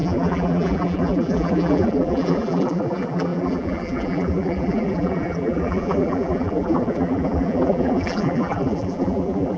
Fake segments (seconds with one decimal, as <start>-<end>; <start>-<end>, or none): 0.0-9.6